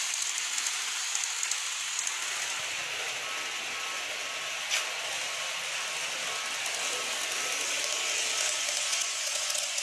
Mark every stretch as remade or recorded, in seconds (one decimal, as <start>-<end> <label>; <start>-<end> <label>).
0.0-8.9 recorded; 8.9-9.8 remade